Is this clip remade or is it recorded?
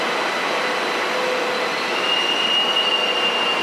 recorded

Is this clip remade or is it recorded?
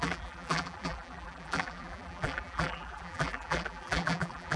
remade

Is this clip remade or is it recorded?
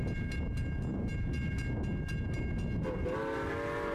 recorded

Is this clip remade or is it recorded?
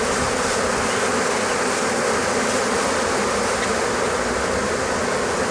recorded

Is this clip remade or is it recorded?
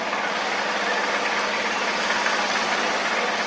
recorded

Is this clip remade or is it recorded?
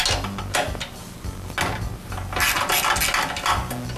recorded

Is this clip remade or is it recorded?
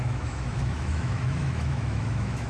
remade